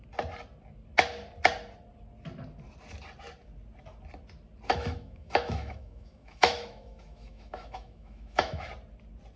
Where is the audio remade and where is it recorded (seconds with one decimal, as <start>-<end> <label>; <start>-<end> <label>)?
0.0-4.7 recorded; 4.7-8.7 remade; 8.7-9.4 recorded